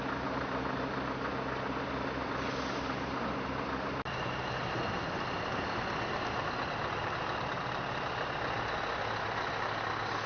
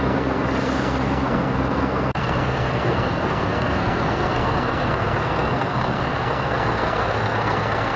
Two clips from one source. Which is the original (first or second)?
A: first